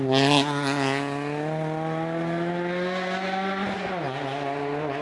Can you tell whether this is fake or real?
real